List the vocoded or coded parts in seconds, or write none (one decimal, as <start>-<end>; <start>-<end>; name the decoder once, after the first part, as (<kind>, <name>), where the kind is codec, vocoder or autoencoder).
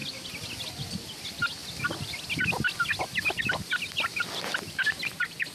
none